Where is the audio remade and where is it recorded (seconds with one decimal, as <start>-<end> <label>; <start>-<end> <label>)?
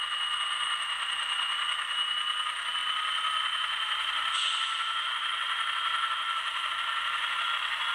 0.0-2.8 recorded; 2.8-7.5 remade; 7.5-7.9 recorded